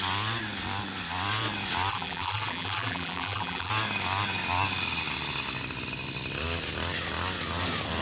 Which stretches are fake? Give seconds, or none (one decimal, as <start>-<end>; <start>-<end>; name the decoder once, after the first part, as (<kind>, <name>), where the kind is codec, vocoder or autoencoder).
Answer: 1.9-3.7 (vocoder, BigVGAN v2)